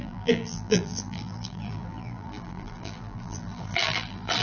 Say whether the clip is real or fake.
fake